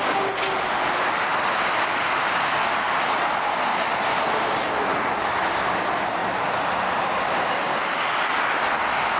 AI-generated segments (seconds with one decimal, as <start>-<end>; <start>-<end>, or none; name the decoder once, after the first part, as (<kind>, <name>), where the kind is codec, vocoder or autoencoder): none